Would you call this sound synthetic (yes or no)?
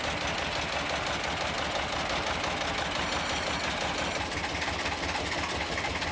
no